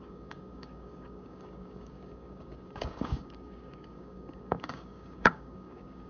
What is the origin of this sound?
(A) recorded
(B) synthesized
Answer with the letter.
B